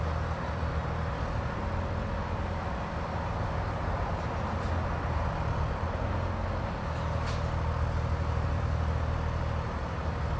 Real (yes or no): yes